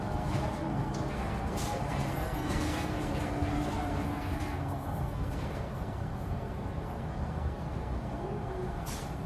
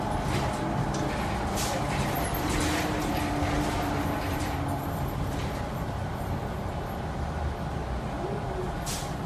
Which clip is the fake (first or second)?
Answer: first